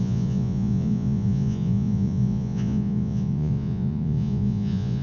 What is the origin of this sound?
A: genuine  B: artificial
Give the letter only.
B